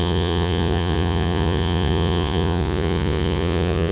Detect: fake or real fake